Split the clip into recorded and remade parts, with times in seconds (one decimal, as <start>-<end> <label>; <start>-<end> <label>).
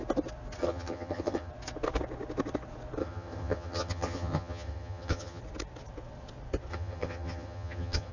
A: 0.0-0.6 recorded; 0.6-1.5 remade; 1.5-3.0 recorded; 3.0-5.4 remade; 5.4-6.7 recorded; 6.7-8.1 remade